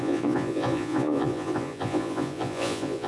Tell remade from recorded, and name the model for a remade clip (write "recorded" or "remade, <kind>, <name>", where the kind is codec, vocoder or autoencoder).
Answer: remade, vocoder, Vocos